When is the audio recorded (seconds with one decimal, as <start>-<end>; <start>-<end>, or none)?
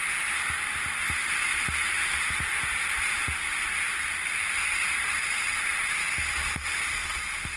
0.0-7.6